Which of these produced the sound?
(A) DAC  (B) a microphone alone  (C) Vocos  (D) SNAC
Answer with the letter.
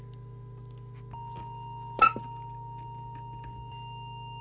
B